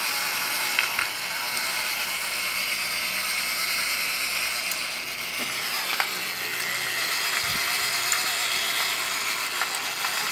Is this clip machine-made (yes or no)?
no